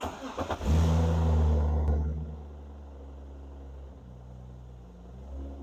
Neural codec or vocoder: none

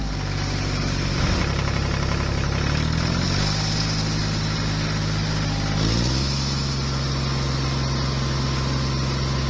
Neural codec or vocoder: none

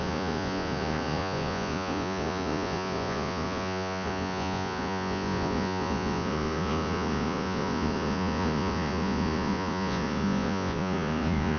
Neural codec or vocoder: vocoder, Vocos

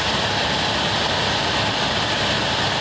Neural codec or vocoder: none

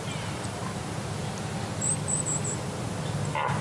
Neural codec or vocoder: vocoder, BigVGAN v2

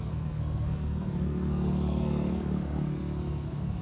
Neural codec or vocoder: codec, SNAC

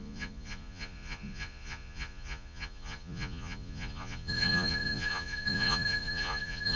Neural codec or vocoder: vocoder, Vocos